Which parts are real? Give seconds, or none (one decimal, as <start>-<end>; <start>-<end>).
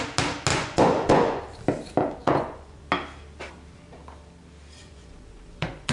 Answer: 0.0-0.5; 1.4-2.2; 2.8-4.8